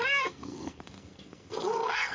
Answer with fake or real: fake